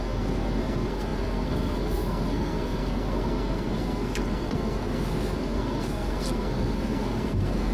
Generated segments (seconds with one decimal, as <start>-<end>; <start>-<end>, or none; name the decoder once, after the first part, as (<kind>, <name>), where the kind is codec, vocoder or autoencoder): 0.0-7.7 (codec, SNAC)